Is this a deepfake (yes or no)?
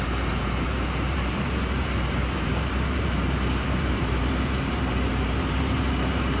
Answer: yes